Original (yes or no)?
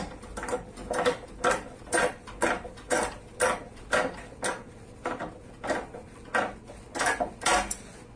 yes